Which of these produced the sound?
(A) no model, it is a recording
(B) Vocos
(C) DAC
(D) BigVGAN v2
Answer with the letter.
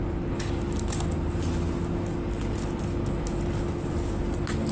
A